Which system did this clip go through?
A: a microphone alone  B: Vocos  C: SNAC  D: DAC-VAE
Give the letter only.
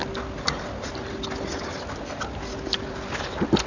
A